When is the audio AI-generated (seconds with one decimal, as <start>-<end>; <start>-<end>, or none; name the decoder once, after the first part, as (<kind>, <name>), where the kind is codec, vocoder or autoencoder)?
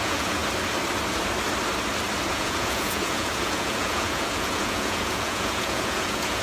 0.0-0.4 (vocoder, Vocos); 2.3-6.4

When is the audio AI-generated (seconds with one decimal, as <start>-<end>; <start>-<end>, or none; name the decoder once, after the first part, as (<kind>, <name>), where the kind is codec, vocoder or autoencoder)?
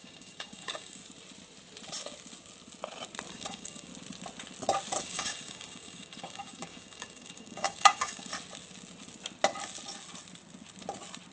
0.0-1.0 (codec, DAC); 3.3-3.9; 5.0-8.3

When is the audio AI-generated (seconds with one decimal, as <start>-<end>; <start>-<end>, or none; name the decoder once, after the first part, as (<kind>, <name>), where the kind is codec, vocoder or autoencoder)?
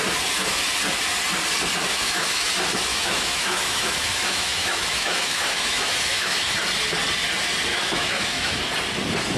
1.9-2.5 (autoencoder, DAC-VAE); 2.9-6.5; 7.7-8.6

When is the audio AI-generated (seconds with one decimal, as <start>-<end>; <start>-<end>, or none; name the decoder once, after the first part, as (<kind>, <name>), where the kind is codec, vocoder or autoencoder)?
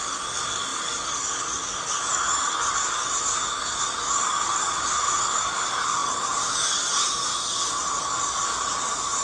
0.0-7.3 (codec, DAC); 8.0-9.2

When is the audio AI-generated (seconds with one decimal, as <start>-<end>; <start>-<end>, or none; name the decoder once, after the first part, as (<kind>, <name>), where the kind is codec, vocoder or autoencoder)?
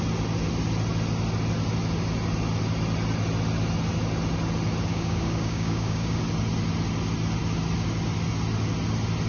4.9-6.2 (codec, DAC)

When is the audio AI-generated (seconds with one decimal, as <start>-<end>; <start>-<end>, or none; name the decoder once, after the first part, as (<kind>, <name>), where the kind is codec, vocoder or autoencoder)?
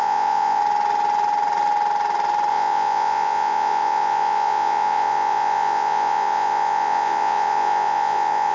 0.0-0.6 (vocoder, Vocos); 2.5-8.5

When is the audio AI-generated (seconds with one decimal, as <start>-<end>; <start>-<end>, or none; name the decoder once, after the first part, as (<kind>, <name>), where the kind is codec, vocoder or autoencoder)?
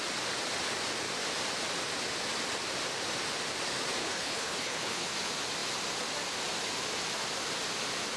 4.0-5.1 (codec, HILCodec)